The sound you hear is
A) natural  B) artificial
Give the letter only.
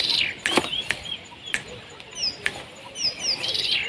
A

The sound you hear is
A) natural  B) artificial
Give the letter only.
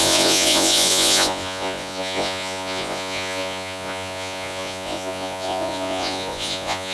B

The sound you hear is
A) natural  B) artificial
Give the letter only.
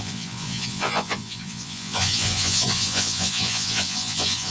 B